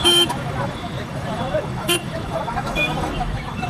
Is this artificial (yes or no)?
yes